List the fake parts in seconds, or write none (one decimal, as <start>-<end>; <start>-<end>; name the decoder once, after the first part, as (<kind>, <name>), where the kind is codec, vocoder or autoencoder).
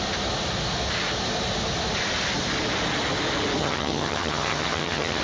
3.6-5.2 (vocoder, HiFi-GAN)